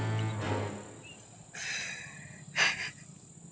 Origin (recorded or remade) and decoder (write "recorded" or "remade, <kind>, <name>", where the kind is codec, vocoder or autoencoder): recorded